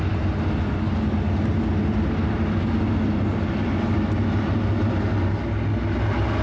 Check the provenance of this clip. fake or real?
real